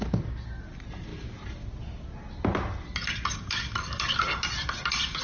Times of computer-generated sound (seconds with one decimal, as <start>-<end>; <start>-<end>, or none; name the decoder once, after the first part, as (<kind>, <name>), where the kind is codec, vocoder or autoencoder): none